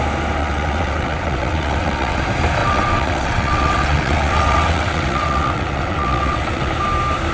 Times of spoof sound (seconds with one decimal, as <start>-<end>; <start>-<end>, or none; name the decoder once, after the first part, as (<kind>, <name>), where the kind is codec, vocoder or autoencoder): 0.4-2.2 (vocoder, WaveNeXt); 2.6-6.7